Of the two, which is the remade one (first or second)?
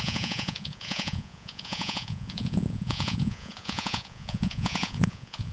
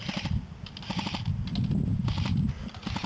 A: first